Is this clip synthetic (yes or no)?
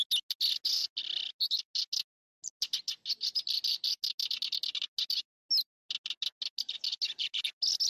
no